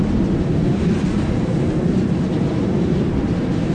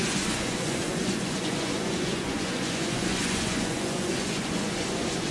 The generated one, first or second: second